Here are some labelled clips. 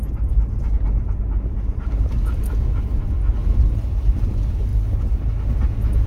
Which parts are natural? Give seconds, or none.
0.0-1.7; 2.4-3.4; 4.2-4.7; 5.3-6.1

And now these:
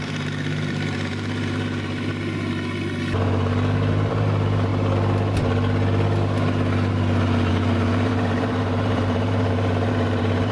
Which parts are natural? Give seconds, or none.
2.1-3.9; 4.7-7.5

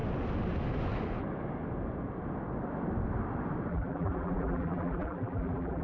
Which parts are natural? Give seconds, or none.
0.0-3.7

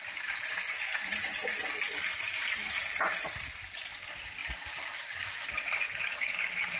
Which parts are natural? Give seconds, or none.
1.4-2.7; 4.4-5.8

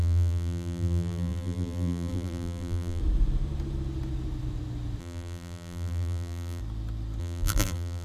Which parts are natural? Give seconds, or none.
3.0-5.0; 6.6-7.2

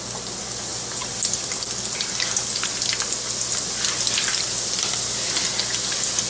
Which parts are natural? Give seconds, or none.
0.0-6.3

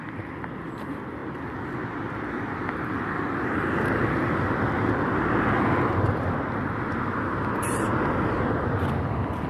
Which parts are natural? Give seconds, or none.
1.2-2.7; 4.2-6.5; 7.9-8.5

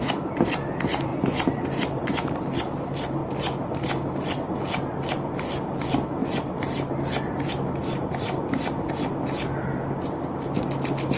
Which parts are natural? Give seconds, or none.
0.0-11.2